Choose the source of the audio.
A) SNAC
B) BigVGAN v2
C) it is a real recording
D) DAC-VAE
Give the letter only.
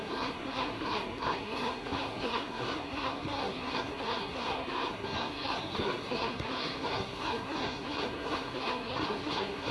A